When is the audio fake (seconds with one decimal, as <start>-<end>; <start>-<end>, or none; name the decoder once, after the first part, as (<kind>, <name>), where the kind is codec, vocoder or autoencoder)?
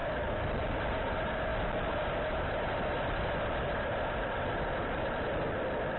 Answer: none